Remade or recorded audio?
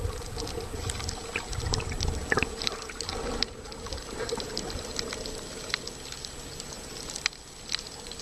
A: recorded